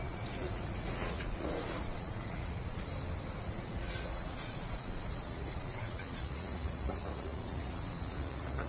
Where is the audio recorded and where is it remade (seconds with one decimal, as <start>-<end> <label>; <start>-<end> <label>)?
0.0-2.9 remade; 2.9-3.4 recorded; 3.4-8.7 remade